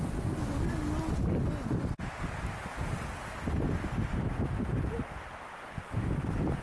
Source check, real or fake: real